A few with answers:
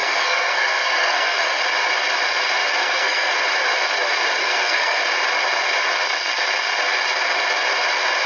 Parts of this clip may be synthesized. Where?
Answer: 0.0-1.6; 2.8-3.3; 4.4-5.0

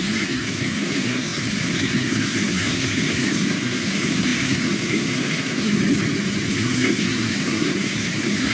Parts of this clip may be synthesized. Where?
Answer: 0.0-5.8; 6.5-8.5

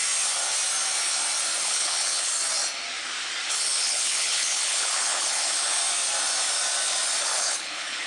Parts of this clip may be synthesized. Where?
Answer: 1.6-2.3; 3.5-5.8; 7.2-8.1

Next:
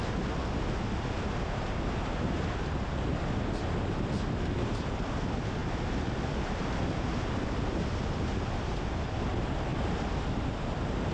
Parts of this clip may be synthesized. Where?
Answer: none